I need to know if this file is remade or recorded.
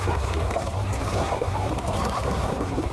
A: remade